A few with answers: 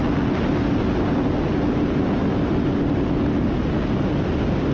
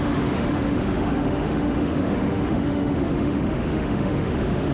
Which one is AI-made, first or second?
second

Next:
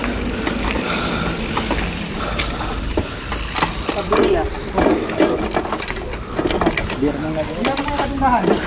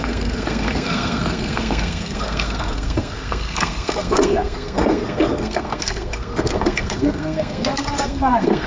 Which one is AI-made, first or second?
second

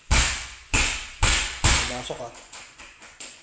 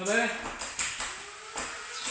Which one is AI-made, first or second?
first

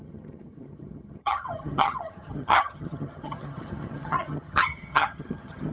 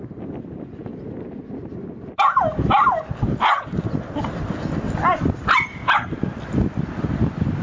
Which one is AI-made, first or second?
first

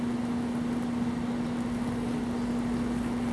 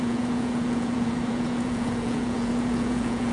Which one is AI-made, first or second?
second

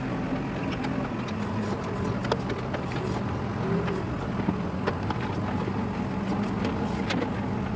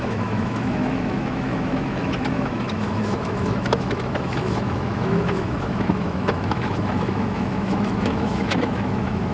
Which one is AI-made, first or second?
second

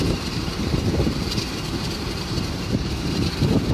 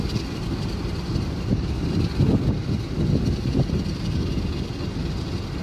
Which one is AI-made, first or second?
first